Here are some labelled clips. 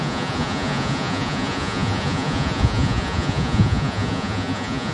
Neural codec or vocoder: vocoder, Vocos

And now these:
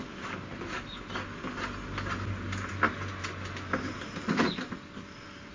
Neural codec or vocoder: none